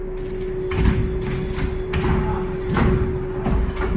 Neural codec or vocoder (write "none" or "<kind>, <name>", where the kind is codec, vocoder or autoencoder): none